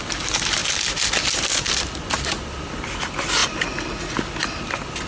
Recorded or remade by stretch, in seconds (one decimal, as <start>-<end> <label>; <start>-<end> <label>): 0.0-5.1 recorded